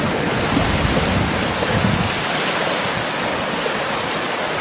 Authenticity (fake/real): real